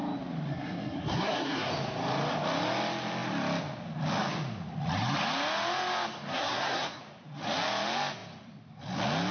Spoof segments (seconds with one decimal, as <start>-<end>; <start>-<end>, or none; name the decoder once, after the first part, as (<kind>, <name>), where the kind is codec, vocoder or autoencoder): 0.5-1.7 (codec, SNAC); 6.3-7.0